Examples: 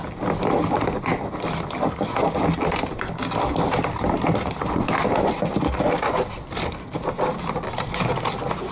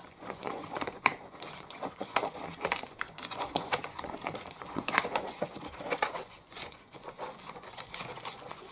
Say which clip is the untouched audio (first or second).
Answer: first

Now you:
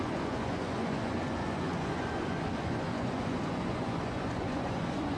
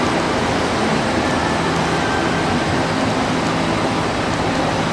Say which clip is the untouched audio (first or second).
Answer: second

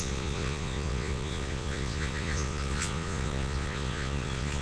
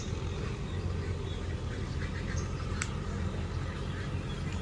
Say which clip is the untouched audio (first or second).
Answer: second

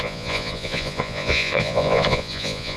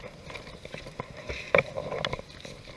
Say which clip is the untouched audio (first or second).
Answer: second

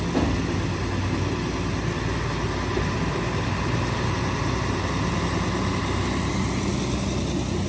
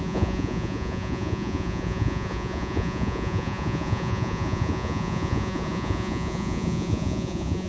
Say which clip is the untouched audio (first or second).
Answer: first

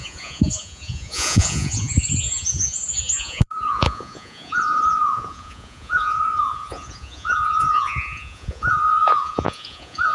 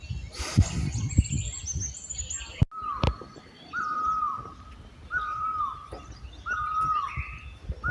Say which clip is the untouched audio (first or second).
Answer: second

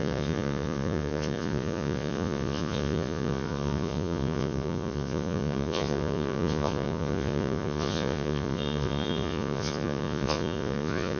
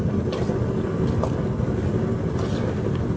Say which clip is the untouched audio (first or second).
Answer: second